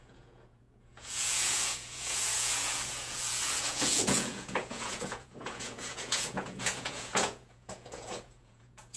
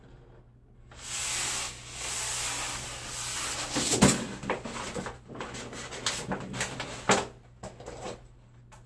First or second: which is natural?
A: second